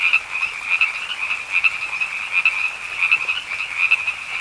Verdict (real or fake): real